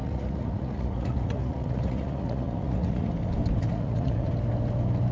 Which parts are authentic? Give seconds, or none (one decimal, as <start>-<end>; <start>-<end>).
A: 3.1-3.6; 4.3-5.1